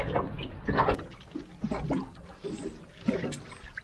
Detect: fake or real real